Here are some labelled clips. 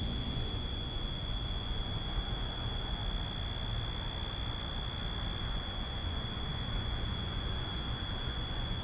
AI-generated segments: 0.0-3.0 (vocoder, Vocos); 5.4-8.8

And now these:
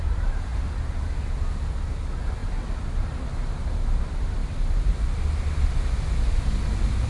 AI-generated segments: none